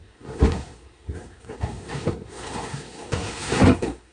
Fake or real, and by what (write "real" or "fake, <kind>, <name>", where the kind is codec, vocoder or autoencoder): fake, codec, SNAC